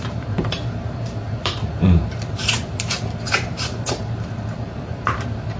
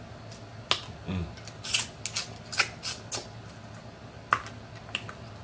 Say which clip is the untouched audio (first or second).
second